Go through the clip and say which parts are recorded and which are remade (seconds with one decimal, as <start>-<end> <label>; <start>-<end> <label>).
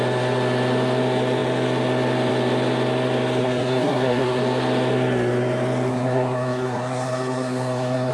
0.0-3.4 recorded; 3.4-4.4 remade; 4.4-5.9 recorded; 5.9-8.1 remade